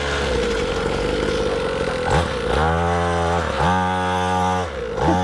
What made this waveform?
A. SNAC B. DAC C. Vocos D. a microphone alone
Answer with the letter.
D